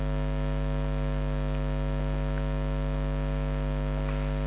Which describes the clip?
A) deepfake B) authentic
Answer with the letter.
B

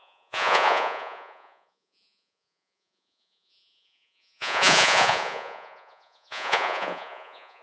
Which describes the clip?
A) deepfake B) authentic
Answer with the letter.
A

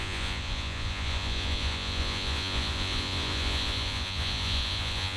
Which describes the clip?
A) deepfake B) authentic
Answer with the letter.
A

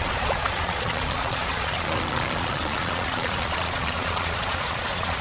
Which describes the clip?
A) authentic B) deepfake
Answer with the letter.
B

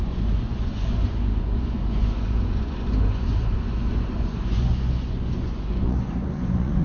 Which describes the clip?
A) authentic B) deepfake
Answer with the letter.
B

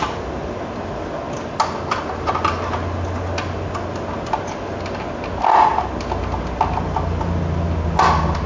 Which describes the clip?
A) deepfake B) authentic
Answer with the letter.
B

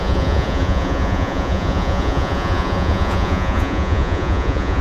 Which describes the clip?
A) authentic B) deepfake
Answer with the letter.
B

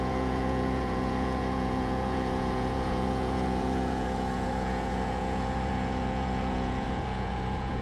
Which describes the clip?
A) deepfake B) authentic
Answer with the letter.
A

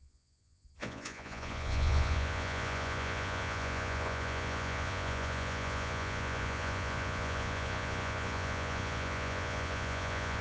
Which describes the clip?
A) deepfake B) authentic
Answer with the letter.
A